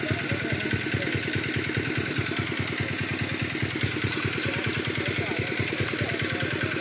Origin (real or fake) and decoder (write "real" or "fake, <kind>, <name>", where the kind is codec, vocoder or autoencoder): real